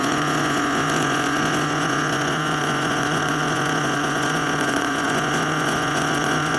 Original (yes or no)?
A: no